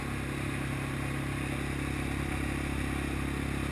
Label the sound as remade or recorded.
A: recorded